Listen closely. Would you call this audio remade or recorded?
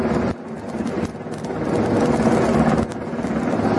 recorded